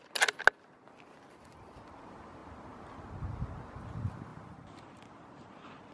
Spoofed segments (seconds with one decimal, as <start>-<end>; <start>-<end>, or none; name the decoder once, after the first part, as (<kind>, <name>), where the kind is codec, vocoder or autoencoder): 4.3-5.2 (vocoder, BigVGAN v2)